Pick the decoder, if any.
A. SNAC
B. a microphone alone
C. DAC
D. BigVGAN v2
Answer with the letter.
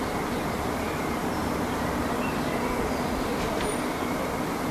D